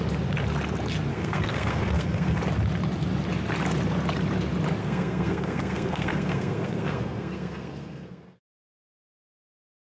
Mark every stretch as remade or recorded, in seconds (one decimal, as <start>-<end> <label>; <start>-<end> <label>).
0.0-1.1 recorded; 1.1-2.4 remade; 2.4-4.8 recorded; 4.8-8.4 remade; 8.4-10.0 recorded